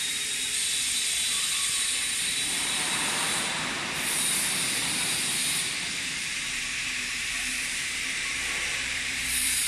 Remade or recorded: remade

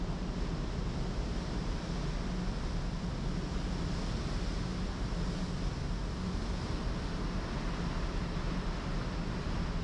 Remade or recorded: recorded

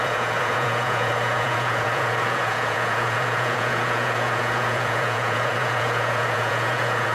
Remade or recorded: remade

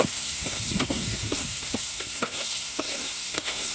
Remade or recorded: remade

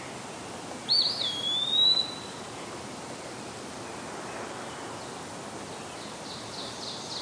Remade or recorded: recorded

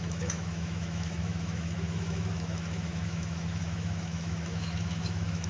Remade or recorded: remade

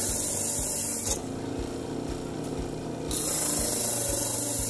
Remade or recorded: recorded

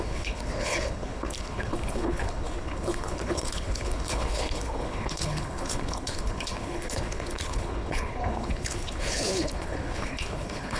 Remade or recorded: remade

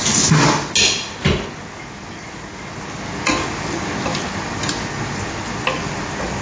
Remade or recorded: recorded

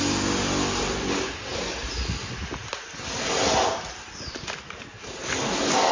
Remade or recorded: recorded